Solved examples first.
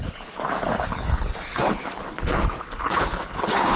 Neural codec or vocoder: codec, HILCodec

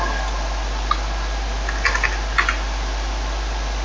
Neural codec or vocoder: none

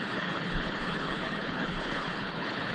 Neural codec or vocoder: codec, HILCodec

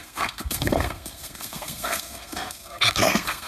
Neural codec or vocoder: codec, SNAC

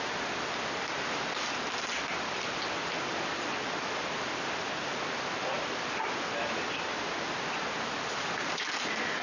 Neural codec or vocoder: none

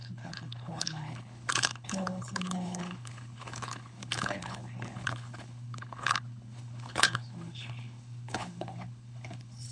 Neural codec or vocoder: codec, HILCodec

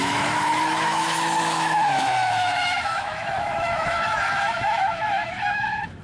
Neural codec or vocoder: autoencoder, DAC-VAE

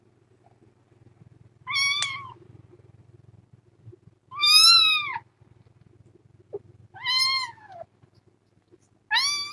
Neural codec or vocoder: none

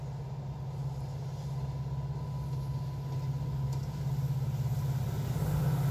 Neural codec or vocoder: none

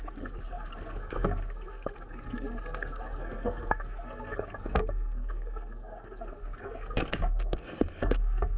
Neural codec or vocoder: codec, SNAC